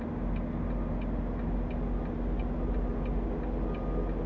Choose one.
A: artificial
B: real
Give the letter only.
B